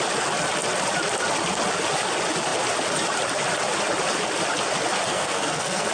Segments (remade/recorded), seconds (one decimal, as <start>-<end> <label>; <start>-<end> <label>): 0.0-5.1 recorded; 5.1-5.9 remade